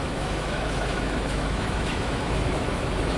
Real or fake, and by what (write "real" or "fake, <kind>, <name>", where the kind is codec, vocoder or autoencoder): fake, autoencoder, DAC-VAE